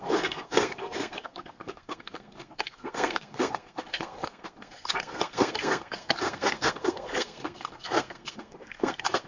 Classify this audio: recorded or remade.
remade